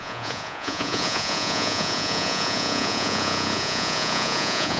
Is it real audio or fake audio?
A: fake